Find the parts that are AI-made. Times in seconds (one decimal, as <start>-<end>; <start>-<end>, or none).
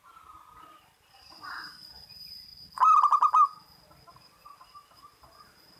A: 0.0-2.5